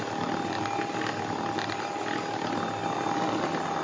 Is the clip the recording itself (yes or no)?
yes